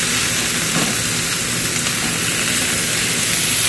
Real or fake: real